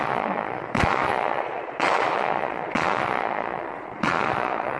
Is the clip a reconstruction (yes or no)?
yes